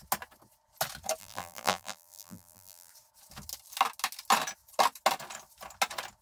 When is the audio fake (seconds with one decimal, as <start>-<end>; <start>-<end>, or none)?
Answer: 1.2-2.9